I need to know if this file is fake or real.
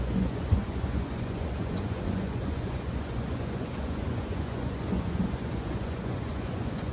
fake